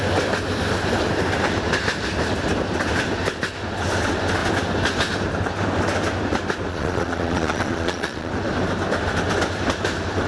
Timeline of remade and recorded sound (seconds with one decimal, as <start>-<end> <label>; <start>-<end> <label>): 0.0-6.7 recorded; 6.7-8.3 remade; 8.3-10.3 recorded